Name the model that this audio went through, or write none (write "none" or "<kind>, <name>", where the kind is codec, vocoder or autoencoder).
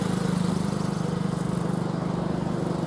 none